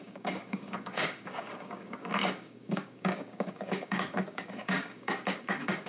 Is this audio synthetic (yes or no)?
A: yes